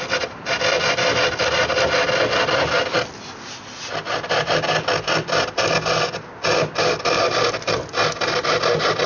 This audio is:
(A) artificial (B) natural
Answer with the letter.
B